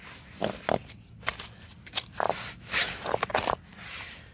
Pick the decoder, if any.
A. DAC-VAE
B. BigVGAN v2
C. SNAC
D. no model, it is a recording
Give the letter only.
D